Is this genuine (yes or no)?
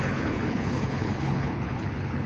no